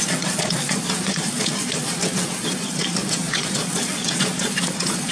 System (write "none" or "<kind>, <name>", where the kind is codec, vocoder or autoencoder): vocoder, Vocos